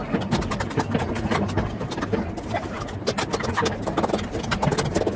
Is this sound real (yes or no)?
yes